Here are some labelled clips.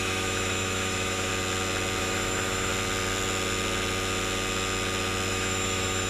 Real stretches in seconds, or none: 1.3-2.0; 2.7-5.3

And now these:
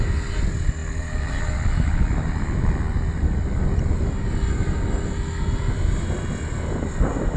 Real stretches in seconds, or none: 0.0-7.4